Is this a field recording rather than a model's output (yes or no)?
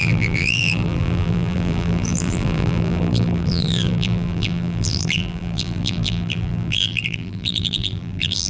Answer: no